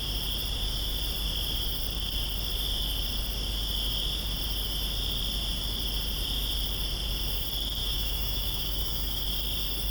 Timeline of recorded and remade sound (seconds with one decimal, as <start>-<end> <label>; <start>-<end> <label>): 0.0-7.8 recorded; 7.8-9.2 remade; 9.2-9.9 recorded